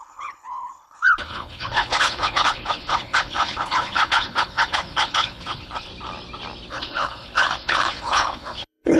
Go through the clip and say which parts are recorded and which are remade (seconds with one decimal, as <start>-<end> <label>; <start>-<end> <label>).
0.0-5.9 remade; 5.9-6.7 recorded; 6.7-9.0 remade